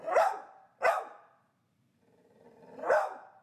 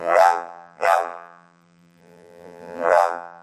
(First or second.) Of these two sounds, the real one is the first